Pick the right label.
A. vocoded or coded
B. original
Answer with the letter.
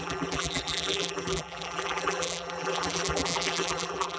A